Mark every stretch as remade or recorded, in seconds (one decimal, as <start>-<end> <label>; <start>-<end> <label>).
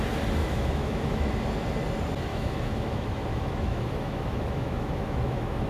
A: 0.0-0.4 recorded; 0.4-1.3 remade; 1.3-2.3 recorded; 2.3-5.7 remade